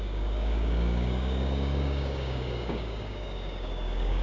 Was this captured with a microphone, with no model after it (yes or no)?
no